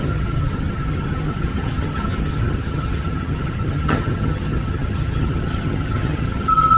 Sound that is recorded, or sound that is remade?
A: remade